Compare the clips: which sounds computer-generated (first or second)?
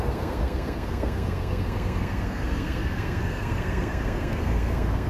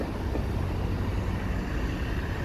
first